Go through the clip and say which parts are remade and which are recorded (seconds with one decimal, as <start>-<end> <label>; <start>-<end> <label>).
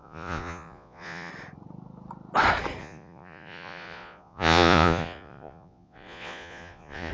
0.0-1.3 remade; 1.3-2.8 recorded; 2.8-7.1 remade